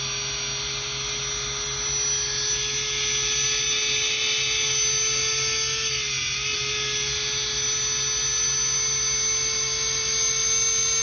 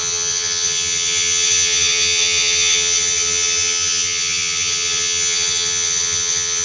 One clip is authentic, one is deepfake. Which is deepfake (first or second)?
second